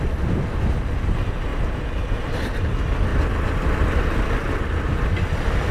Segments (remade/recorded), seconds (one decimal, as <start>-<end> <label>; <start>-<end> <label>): 0.0-5.7 recorded